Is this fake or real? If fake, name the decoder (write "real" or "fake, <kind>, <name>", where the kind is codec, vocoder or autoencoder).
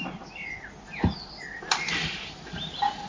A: real